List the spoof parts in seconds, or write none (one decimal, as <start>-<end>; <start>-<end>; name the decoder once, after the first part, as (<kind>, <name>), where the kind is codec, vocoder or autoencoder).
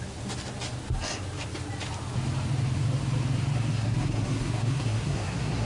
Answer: 3.7-5.7 (codec, SNAC)